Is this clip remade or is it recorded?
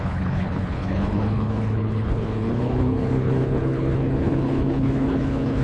remade